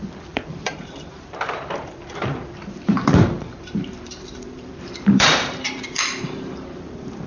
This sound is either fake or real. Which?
fake